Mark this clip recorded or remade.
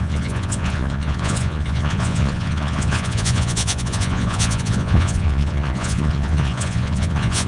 remade